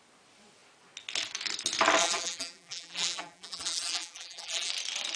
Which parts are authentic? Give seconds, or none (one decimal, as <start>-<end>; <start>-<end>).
0.0-2.0; 4.7-5.2